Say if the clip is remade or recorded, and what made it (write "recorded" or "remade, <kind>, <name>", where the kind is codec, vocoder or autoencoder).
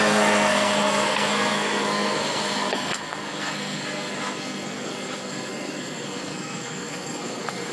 remade, codec, SNAC